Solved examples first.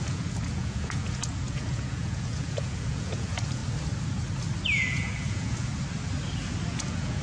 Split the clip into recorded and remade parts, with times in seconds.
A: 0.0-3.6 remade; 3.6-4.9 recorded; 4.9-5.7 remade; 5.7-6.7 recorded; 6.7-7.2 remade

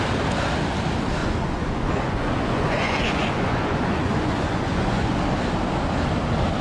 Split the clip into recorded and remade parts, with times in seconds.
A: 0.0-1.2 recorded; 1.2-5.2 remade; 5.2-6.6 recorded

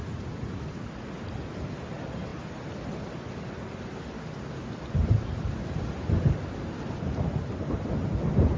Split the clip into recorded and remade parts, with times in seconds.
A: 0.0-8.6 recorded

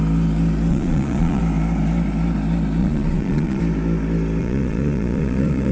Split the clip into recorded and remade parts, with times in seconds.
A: 0.0-0.7 recorded; 0.7-1.4 remade; 1.4-2.8 recorded; 2.8-3.6 remade; 3.6-4.4 recorded; 4.4-5.7 remade